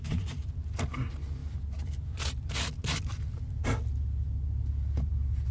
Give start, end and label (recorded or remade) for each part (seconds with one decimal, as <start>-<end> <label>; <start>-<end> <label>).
0.0-5.5 recorded